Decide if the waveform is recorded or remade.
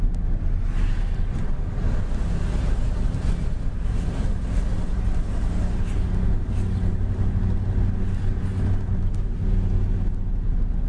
recorded